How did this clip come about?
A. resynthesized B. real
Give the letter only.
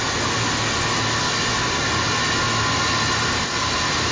B